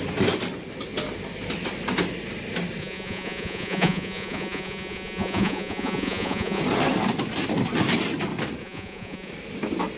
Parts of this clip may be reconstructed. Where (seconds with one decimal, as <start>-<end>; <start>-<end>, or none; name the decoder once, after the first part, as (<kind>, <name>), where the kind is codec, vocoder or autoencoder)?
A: 2.8-6.6 (vocoder, Vocos); 8.6-9.3